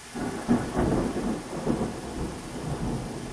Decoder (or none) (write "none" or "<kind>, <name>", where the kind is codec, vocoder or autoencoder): none